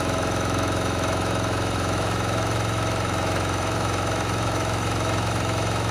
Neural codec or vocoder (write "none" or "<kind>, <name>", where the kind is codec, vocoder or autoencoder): autoencoder, DAC-VAE